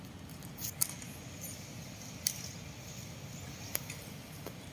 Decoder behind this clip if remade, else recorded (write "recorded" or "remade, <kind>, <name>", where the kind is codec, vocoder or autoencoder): recorded